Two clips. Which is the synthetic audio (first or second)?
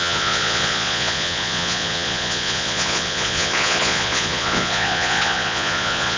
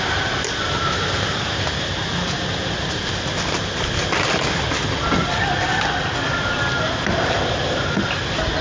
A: first